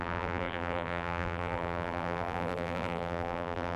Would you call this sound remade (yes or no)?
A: yes